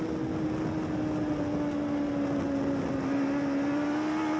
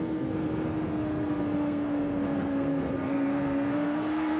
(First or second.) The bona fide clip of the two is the first